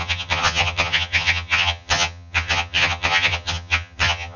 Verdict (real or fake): fake